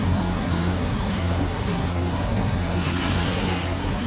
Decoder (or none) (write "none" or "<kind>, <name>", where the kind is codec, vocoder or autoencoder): codec, SNAC